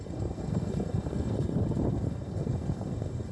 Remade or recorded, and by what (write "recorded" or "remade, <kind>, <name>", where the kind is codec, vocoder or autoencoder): remade, codec, SNAC